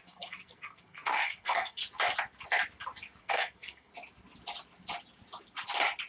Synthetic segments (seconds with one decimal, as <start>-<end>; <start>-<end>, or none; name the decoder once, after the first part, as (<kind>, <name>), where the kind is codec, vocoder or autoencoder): 0.0-1.8 (codec, SNAC); 3.2-3.9